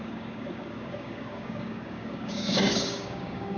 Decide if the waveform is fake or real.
fake